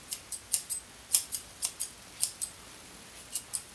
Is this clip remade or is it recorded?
recorded